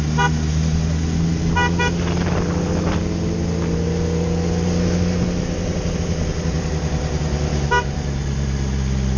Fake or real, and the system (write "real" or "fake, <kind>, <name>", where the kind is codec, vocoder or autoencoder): real